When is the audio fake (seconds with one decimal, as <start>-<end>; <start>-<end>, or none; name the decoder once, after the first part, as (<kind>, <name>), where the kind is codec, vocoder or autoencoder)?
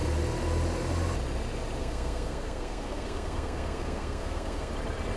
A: 1.8-4.7 (codec, SNAC)